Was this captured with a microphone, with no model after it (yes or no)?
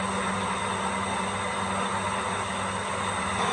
yes